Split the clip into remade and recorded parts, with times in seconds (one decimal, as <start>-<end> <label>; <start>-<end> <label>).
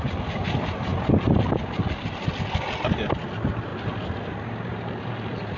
0.0-5.6 recorded